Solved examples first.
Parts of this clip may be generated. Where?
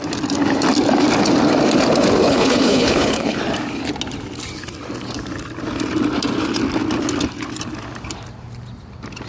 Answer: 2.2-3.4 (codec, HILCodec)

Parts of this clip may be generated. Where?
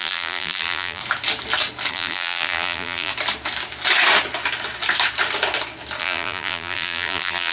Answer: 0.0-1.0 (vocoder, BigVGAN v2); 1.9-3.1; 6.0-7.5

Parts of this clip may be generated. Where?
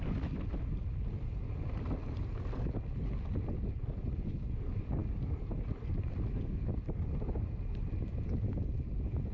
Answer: none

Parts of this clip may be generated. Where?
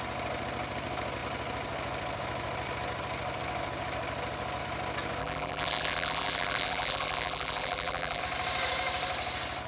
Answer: 5.2-8.2 (vocoder, BigVGAN v2)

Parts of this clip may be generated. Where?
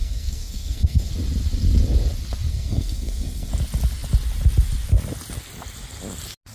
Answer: 0.0-1.1 (codec, SNAC); 2.5-3.5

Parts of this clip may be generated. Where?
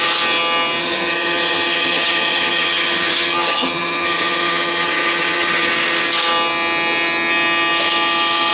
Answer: 0.8-5.7 (vocoder, HiFi-GAN)